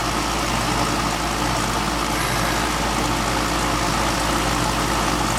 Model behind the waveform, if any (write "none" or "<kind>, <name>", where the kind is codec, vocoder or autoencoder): none